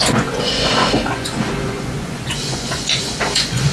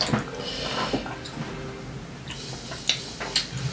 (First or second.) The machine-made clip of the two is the first